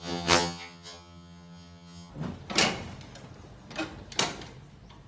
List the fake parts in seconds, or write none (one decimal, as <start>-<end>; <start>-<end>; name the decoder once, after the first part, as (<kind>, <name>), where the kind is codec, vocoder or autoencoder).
0.0-2.1 (vocoder, HiFi-GAN)